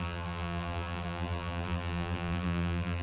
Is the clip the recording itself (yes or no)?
no